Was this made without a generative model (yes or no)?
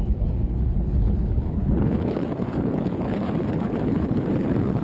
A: no